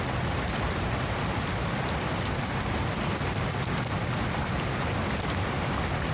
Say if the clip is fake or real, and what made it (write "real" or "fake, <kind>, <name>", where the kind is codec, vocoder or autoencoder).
real